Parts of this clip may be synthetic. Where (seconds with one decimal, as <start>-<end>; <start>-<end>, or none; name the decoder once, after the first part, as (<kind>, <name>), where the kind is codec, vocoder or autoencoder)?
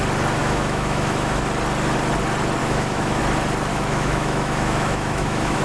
0.4-1.4 (autoencoder, DAC-VAE); 2.6-3.2; 3.7-5.6